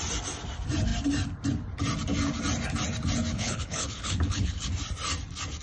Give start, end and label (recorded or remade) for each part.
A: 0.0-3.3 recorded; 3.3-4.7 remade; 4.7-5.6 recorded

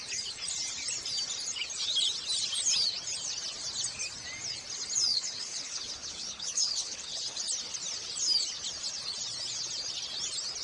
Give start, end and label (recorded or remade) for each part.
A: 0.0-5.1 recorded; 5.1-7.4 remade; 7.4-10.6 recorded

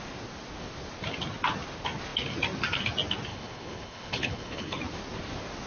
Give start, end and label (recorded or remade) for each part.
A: 0.0-3.3 recorded; 3.3-4.8 remade; 4.8-5.7 recorded

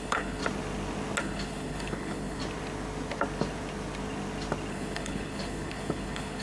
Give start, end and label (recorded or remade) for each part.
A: 0.0-0.4 remade; 0.4-1.2 recorded; 1.2-2.4 remade; 2.4-4.7 recorded; 4.7-6.4 remade

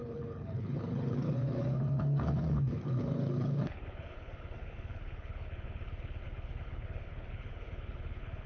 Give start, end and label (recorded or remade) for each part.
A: 0.0-8.5 remade

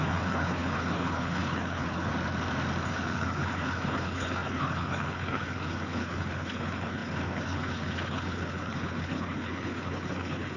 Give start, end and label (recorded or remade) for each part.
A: 0.0-2.1 remade; 2.1-2.9 recorded; 2.9-10.6 remade